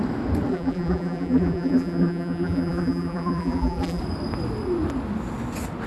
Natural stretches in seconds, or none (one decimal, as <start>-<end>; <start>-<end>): 0.0-0.5; 4.0-5.9